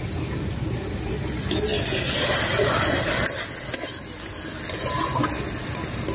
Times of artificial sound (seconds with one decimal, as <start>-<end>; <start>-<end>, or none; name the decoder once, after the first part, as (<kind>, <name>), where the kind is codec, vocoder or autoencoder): none